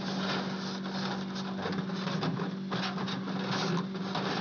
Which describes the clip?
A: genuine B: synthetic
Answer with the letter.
A